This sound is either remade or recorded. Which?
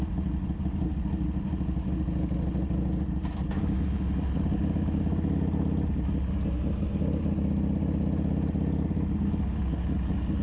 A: recorded